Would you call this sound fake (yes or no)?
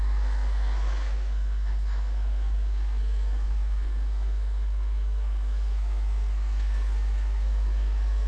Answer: yes